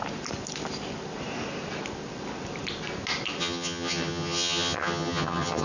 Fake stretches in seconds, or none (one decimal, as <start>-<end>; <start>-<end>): 3.4-5.6